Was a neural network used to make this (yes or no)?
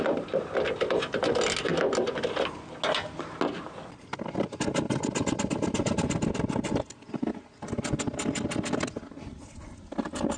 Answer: no